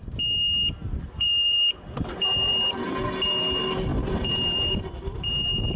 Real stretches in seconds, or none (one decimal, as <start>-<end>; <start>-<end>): 0.0-0.8; 2.5-3.9; 4.8-5.8